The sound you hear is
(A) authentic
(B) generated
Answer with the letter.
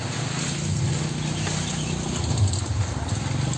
A